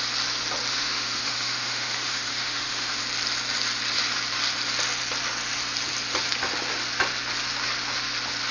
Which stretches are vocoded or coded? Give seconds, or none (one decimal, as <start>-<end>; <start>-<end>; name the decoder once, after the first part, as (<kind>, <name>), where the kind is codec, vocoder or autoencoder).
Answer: 0.7-3.0 (autoencoder, DAC-VAE)